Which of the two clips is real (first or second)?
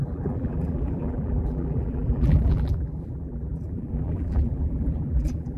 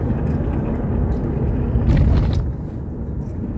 second